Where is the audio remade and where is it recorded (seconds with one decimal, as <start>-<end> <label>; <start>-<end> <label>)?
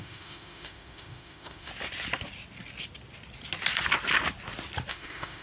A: 0.0-1.7 remade; 1.7-4.9 recorded; 4.9-5.4 remade